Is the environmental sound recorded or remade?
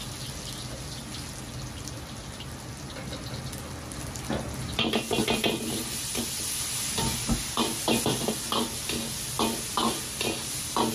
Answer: recorded